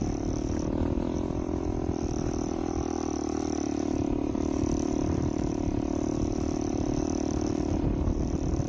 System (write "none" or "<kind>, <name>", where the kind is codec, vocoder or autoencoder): none